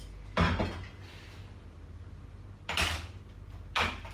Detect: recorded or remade recorded